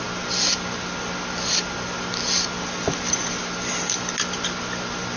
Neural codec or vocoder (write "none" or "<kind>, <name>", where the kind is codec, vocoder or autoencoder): none